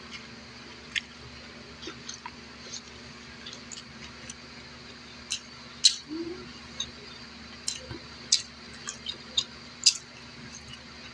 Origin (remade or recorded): recorded